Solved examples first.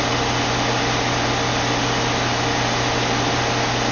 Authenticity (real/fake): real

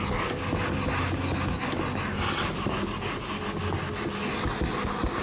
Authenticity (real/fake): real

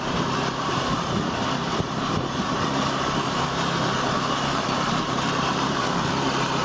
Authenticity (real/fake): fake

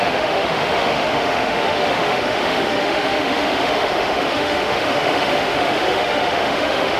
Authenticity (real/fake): fake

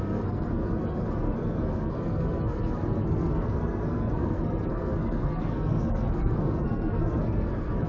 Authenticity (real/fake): fake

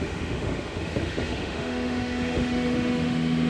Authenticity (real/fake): fake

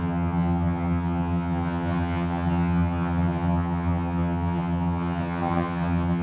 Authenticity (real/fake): fake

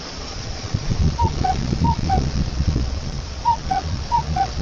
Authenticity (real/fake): fake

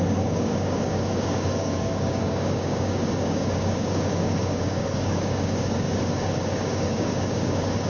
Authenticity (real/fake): fake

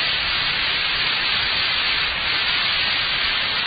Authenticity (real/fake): fake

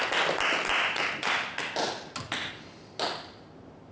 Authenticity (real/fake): real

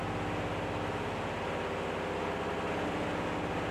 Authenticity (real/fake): real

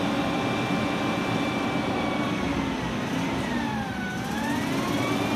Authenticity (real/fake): real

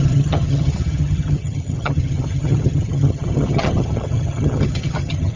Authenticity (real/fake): fake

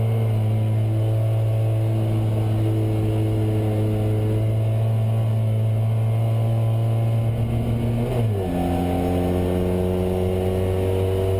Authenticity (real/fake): real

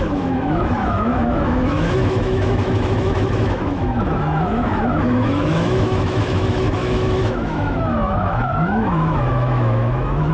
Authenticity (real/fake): fake